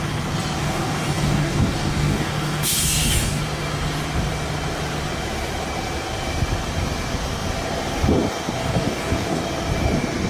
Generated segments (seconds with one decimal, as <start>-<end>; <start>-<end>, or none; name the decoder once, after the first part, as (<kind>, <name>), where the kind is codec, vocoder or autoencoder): 0.6-3.4 (codec, DAC); 8.6-9.4